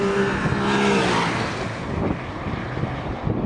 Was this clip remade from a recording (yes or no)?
no